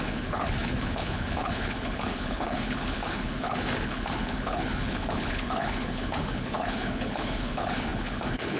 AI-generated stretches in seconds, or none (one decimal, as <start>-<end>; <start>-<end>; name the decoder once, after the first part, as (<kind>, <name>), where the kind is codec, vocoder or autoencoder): 0.0-8.6 (codec, HILCodec)